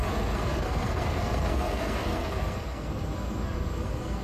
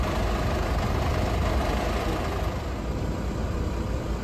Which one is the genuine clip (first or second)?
second